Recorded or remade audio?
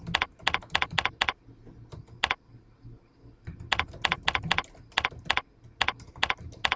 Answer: recorded